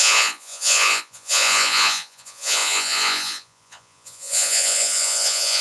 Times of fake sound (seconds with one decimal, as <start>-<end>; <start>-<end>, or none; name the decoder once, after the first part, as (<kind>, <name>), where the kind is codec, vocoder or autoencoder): 0.0-5.6 (vocoder, Vocos)